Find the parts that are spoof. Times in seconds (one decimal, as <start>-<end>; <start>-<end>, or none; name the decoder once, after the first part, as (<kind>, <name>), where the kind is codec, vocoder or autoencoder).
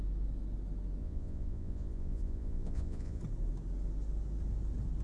1.0-3.2 (vocoder, Vocos)